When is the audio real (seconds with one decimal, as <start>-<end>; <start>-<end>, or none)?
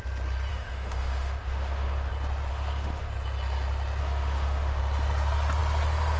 0.0-0.5; 2.1-2.5; 3.1-4.0; 4.8-6.2